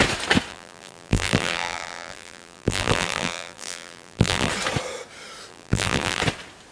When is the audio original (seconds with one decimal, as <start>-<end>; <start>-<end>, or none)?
0.0-0.5; 4.5-5.5; 6.2-6.7